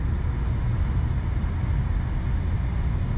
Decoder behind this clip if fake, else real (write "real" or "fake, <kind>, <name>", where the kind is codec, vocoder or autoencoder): real